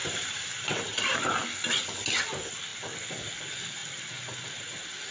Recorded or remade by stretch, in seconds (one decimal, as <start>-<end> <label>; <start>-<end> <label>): 0.0-1.3 remade; 1.3-5.1 recorded